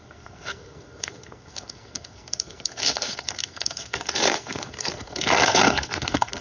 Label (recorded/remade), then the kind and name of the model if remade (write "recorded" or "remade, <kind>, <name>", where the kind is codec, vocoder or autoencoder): remade, codec, SNAC